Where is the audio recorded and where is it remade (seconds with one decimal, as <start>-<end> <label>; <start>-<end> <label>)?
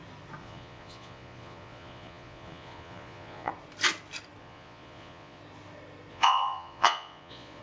0.0-0.4 recorded; 0.4-3.5 remade; 3.5-4.4 recorded; 4.4-5.4 remade; 5.4-6.1 recorded; 6.1-7.6 remade